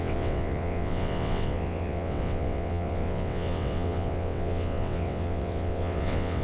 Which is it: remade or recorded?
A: remade